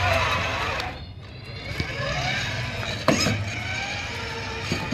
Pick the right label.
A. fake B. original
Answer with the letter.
B